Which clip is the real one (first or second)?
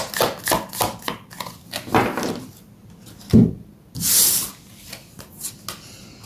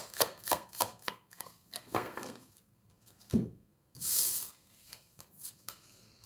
first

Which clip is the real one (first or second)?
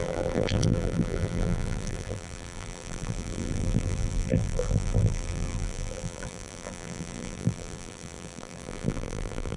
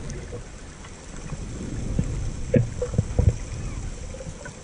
second